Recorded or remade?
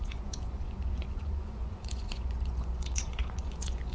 remade